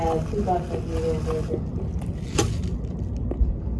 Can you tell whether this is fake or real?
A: real